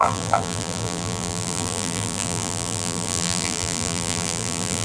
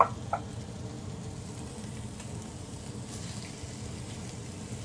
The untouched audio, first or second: second